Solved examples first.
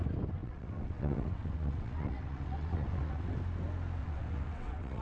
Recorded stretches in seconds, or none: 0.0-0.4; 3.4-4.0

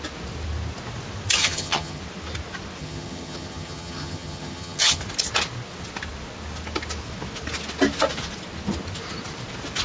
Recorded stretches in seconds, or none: 0.0-1.4; 2.0-2.8; 5.0-9.8

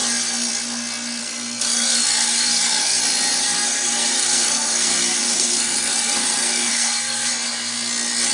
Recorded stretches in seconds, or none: 0.0-1.2; 3.0-3.4; 7.3-8.3

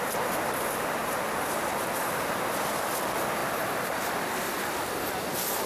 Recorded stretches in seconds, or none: 0.0-3.4; 4.1-5.7

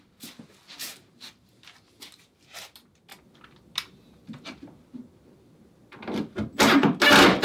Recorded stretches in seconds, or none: 0.0-7.4

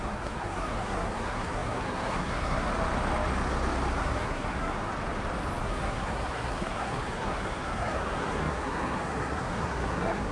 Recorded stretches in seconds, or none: 2.7-4.0; 4.9-5.6